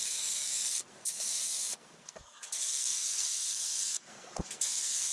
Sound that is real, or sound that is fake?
fake